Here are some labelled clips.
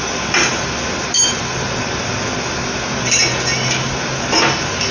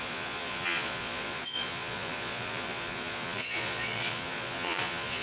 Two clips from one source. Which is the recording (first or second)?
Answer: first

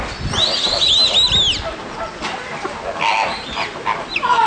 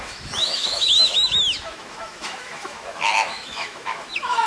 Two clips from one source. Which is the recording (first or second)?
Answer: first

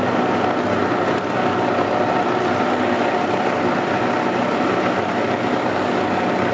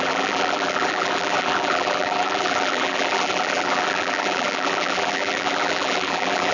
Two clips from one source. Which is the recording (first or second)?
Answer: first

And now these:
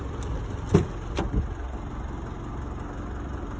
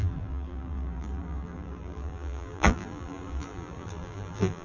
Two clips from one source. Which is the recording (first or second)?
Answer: first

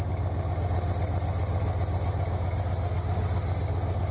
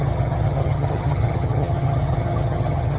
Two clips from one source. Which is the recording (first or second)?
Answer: first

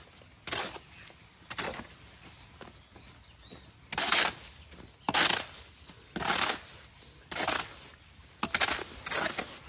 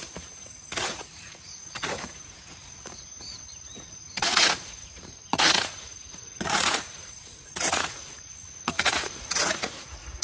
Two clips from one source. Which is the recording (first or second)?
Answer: first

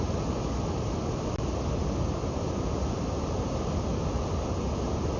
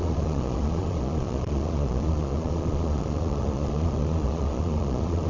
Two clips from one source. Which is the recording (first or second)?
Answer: first